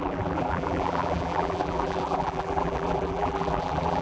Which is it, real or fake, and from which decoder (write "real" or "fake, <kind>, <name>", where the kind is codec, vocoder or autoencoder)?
fake, vocoder, BigVGAN v2